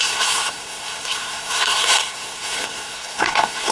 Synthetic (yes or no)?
yes